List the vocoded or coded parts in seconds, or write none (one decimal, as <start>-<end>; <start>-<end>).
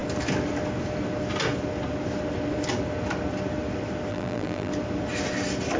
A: 4.1-4.7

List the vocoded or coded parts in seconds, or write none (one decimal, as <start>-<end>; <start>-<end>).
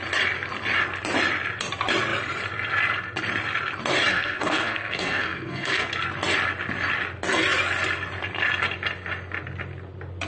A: 4.1-5.9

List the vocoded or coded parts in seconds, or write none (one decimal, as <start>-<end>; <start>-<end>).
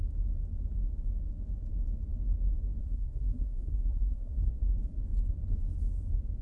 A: 2.8-4.5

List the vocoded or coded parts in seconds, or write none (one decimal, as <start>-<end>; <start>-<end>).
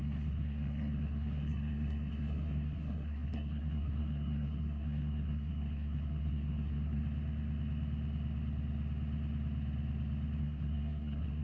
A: 0.0-7.0; 10.4-11.4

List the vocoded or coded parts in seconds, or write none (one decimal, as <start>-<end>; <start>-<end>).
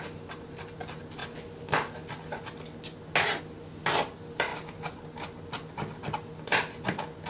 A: none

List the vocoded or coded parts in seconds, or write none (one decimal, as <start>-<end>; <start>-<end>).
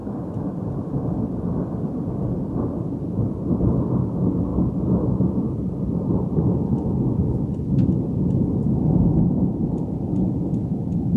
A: none